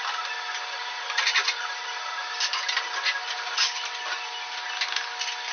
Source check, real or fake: real